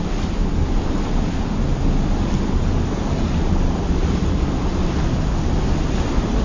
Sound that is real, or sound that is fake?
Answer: real